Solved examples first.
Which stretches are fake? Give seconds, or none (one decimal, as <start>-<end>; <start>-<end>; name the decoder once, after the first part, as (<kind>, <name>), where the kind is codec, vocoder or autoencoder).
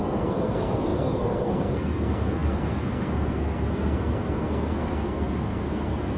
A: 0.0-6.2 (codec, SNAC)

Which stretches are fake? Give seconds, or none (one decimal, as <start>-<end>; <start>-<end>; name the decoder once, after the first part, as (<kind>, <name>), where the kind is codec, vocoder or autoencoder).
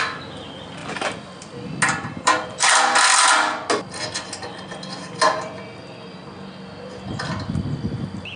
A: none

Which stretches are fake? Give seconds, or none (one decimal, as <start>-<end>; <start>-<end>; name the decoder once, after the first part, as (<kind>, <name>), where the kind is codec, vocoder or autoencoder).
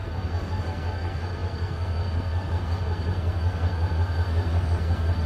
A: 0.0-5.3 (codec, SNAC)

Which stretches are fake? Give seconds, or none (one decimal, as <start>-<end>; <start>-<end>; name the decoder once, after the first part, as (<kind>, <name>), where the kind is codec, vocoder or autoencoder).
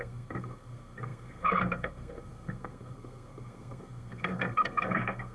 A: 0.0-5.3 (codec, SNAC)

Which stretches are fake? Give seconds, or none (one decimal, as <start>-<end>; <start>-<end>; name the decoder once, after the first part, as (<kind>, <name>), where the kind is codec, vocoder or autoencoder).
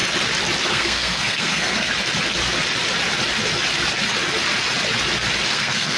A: 0.7-1.9 (codec, SNAC); 5.5-6.0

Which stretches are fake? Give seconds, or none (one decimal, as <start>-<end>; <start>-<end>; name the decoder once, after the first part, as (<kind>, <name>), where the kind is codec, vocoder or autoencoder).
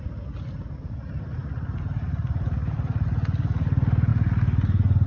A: none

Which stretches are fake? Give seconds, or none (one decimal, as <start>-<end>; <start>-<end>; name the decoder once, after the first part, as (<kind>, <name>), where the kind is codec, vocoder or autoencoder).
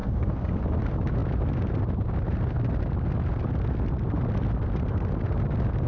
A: 0.0-0.5 (codec, SNAC)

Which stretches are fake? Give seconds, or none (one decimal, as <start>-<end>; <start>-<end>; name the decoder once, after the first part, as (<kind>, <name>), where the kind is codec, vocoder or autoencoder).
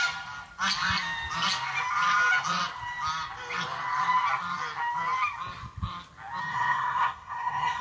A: 6.4-7.8 (codec, SNAC)